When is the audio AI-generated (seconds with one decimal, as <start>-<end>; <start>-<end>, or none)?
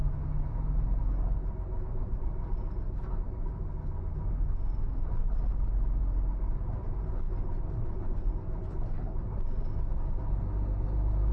none